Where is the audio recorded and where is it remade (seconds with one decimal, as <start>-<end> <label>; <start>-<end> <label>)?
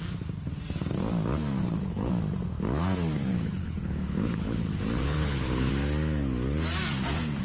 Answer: 0.0-1.6 recorded; 1.6-2.1 remade; 2.1-3.3 recorded; 3.3-5.7 remade; 5.7-7.4 recorded